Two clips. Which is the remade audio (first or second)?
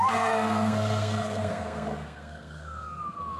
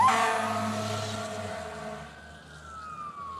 first